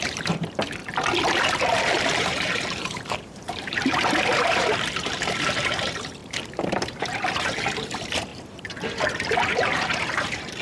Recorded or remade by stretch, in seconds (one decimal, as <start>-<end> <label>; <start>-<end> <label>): 0.0-0.8 remade; 0.8-1.4 recorded; 1.4-10.6 remade